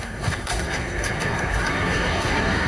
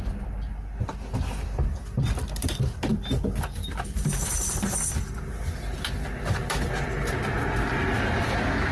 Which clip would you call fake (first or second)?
first